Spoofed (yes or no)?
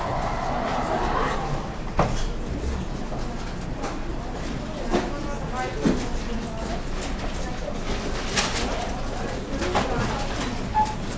no